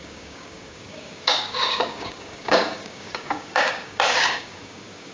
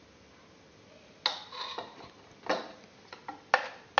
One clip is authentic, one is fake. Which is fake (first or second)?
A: first